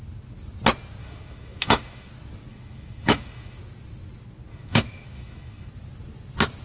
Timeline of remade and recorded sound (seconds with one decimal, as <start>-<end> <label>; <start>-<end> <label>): 0.0-1.0 recorded; 1.0-2.1 remade; 2.1-2.5 recorded; 2.5-3.6 remade; 3.6-4.5 recorded; 4.5-5.7 remade; 5.7-6.6 recorded